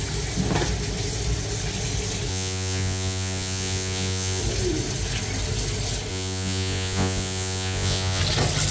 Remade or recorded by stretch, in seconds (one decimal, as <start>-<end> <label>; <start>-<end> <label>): 0.0-2.3 recorded; 2.3-4.4 remade; 4.4-6.1 recorded; 6.1-8.2 remade; 8.2-8.7 recorded